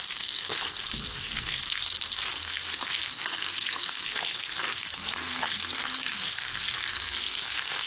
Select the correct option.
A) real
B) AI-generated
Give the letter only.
B